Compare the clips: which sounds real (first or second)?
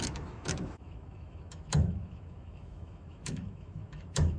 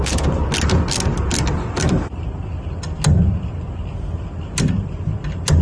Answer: second